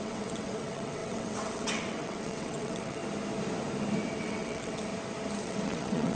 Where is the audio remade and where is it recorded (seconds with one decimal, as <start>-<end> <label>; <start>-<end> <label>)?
0.0-3.0 remade; 3.0-4.2 recorded; 4.2-4.9 remade; 4.9-5.4 recorded; 5.4-6.1 remade